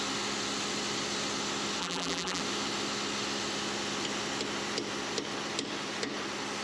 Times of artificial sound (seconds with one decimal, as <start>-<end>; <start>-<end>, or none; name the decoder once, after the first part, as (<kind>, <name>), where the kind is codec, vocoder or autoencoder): 1.8-2.4 (vocoder, BigVGAN v2)